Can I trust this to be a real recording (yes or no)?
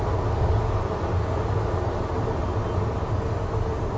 yes